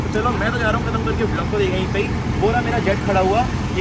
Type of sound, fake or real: real